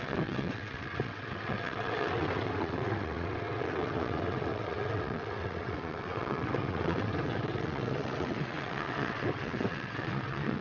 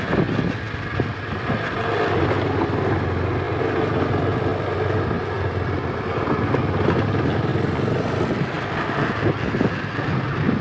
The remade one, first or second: first